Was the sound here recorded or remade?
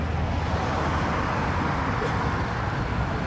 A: recorded